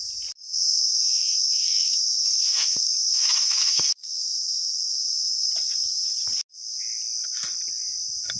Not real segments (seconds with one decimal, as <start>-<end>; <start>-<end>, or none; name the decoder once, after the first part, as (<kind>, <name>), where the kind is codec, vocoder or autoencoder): 0.8-5.1 (autoencoder, DAC-VAE)